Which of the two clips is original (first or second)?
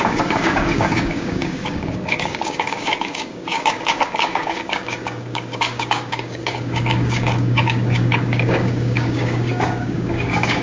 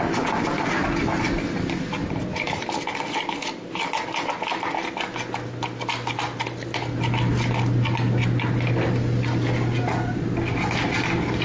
second